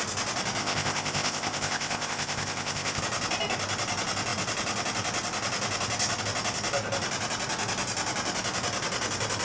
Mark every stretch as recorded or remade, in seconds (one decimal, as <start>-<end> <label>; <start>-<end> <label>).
0.0-0.6 recorded; 0.6-3.0 remade; 3.0-9.4 recorded